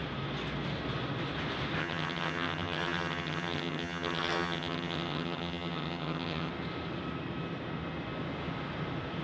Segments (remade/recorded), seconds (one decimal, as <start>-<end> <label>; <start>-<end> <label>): 0.0-1.8 recorded; 1.8-6.5 remade; 6.5-9.2 recorded

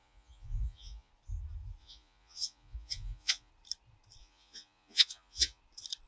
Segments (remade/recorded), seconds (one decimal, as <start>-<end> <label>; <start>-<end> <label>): 0.0-1.1 remade; 1.1-1.8 recorded; 1.8-3.5 remade; 3.5-4.2 recorded; 4.2-5.6 remade; 5.6-6.1 recorded

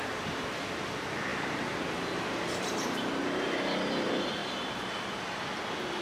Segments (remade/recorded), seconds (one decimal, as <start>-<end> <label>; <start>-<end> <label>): 0.0-1.3 recorded; 1.3-3.2 remade; 3.2-4.4 recorded; 4.4-5.2 remade; 5.2-6.0 recorded

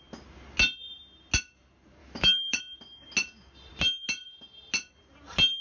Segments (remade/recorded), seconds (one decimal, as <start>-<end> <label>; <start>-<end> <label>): 0.0-2.0 recorded; 2.0-2.6 remade; 2.6-5.6 recorded

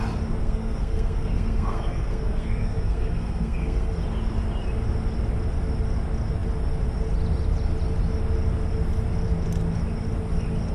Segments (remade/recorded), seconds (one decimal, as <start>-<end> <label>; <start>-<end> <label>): 0.0-0.4 recorded; 0.4-3.9 remade; 3.9-10.7 recorded

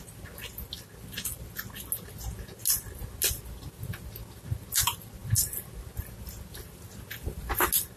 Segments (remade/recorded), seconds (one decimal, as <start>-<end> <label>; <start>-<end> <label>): 0.0-8.0 recorded

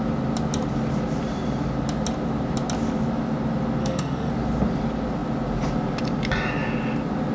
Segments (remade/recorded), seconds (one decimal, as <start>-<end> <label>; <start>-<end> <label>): 0.0-3.8 recorded; 3.8-4.3 remade; 4.3-7.3 recorded

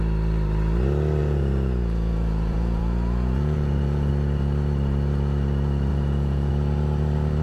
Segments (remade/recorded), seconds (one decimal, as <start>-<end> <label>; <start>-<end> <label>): 0.0-1.2 recorded; 1.2-4.1 remade; 4.1-5.9 recorded; 5.9-6.5 remade; 6.5-7.4 recorded